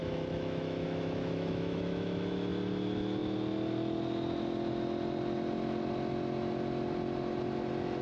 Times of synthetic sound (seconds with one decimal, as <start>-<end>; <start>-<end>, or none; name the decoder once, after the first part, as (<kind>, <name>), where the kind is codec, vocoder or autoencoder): 0.0-2.5 (autoencoder, DAC-VAE)